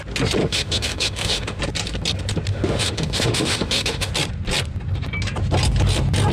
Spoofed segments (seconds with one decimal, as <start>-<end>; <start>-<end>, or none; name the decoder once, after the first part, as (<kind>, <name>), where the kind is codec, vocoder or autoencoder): 0.4-1.6 (autoencoder, DAC-VAE); 2.5-4.1